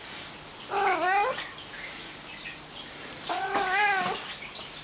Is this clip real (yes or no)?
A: yes